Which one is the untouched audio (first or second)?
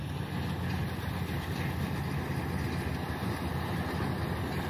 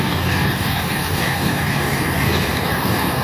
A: first